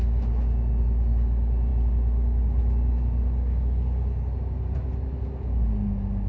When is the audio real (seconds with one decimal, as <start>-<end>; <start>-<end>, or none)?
0.0-6.3